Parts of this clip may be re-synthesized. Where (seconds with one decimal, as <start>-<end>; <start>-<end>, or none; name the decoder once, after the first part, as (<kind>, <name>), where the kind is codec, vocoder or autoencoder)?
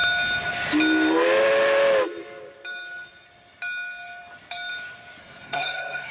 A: 5.2-6.1 (codec, SNAC)